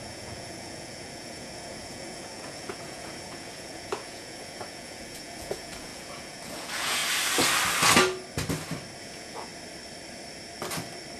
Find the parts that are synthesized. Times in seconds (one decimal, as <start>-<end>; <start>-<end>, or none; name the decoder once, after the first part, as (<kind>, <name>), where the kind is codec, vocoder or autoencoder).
0.0-7.0 (vocoder, Vocos); 9.0-9.5